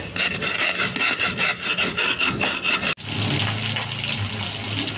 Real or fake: real